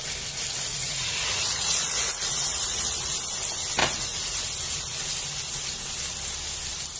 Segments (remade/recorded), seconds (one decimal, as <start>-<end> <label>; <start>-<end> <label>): 0.0-0.7 recorded; 0.7-3.1 remade; 3.1-3.8 recorded; 3.8-4.4 remade; 4.4-7.0 recorded